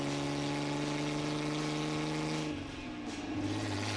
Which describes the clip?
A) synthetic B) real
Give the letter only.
B